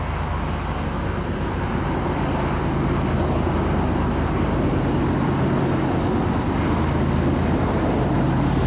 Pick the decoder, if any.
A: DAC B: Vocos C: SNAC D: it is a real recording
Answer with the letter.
D